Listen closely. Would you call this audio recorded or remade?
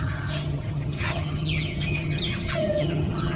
remade